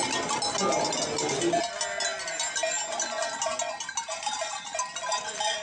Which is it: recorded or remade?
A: recorded